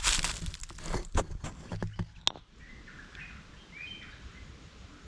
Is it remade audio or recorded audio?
recorded